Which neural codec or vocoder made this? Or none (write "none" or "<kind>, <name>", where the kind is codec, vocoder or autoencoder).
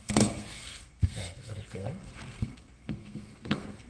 codec, SNAC